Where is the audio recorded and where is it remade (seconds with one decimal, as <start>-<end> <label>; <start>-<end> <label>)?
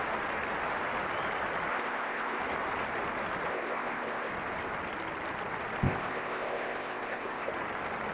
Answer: 0.0-1.7 recorded; 1.7-2.4 remade; 2.4-3.5 recorded; 3.5-4.3 remade; 4.3-5.8 recorded; 5.8-7.5 remade; 7.5-8.1 recorded